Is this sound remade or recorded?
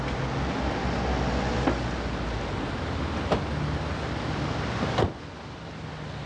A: recorded